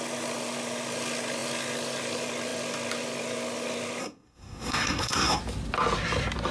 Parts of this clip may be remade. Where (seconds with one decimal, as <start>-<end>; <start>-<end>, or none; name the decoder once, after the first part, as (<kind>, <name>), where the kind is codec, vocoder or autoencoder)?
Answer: 4.0-5.4 (codec, SNAC)